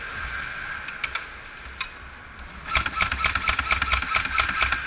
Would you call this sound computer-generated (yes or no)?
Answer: no